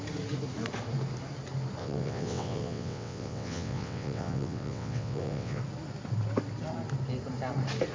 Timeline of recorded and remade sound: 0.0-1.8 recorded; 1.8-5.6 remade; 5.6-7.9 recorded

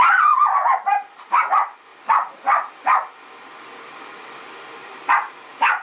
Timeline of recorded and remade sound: 0.0-1.9 recorded; 1.9-5.1 remade; 5.1-5.8 recorded